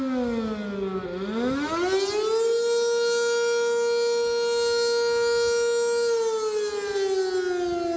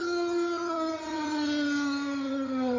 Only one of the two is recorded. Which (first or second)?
first